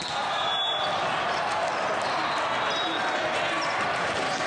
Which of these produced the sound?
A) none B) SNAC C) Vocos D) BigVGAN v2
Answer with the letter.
A